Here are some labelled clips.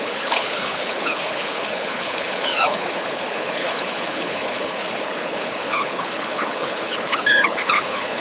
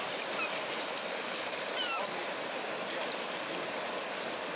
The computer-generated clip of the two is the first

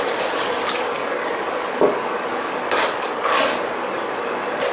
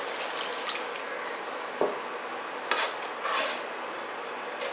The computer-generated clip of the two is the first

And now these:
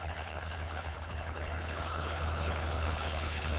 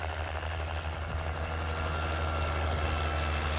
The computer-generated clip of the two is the first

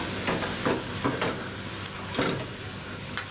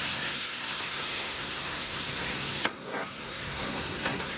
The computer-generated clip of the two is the second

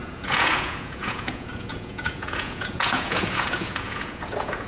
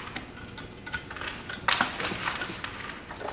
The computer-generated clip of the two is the first